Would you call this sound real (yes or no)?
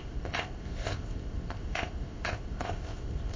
no